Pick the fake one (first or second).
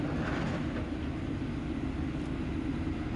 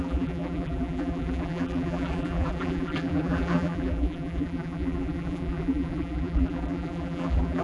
second